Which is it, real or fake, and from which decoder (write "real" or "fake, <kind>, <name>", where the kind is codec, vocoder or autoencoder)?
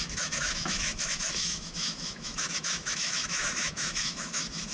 fake, autoencoder, DAC-VAE